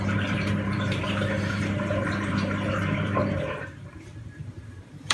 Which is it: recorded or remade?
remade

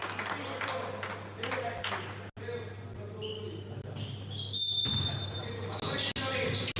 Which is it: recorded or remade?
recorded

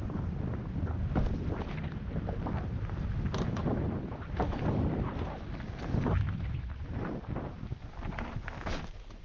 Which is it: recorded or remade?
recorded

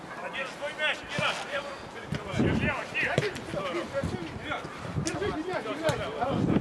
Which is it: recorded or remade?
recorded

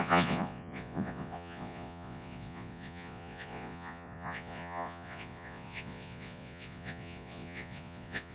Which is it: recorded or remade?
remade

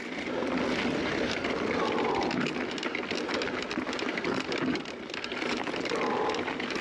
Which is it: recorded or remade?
recorded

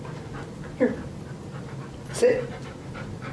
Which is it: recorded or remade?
recorded